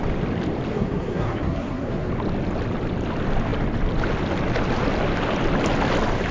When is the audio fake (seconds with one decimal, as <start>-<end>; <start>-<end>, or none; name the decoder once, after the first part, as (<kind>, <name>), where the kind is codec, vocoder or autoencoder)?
0.7-2.1 (codec, SNAC)